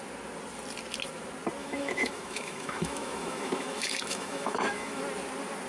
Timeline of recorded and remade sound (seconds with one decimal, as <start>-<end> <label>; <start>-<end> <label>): 0.0-1.6 recorded; 1.6-5.0 remade; 5.0-5.7 recorded

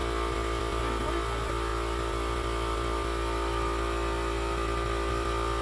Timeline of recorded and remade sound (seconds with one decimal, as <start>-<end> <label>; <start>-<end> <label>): 0.0-5.6 recorded